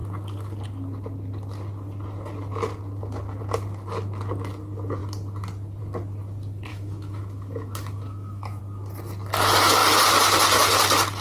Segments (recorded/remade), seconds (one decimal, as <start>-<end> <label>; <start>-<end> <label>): 0.0-6.7 recorded; 6.7-8.6 remade; 8.6-11.2 recorded